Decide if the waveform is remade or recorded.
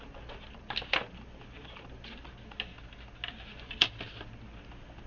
recorded